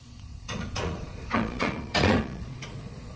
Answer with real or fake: fake